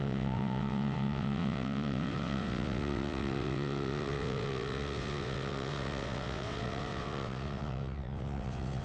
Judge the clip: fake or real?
fake